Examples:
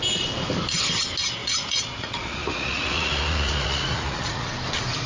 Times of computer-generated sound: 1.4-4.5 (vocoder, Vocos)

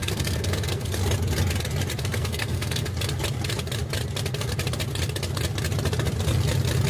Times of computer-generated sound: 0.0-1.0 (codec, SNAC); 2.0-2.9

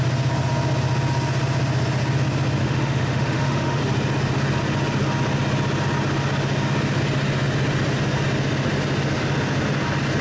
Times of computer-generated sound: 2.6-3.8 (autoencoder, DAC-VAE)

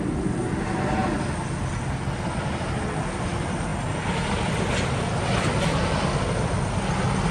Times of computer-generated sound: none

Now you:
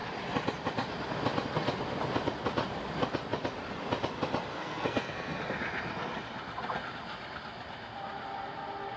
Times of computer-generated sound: 4.5-5.4 (codec, SNAC)

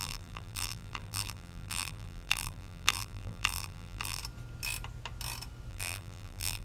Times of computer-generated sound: 0.0-4.2 (vocoder, BigVGAN v2); 5.7-6.6